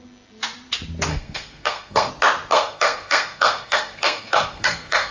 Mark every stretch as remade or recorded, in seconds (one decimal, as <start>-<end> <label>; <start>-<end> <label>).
0.0-1.1 recorded; 1.1-2.1 remade; 2.1-2.5 recorded; 2.5-5.1 remade